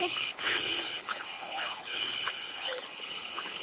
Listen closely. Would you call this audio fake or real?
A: fake